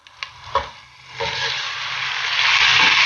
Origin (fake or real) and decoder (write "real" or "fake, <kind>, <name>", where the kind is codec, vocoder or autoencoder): real